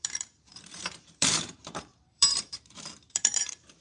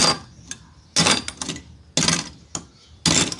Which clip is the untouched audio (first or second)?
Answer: second